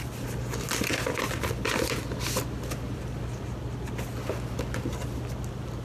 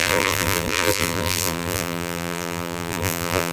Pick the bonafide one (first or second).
first